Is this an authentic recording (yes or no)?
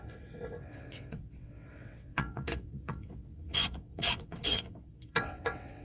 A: no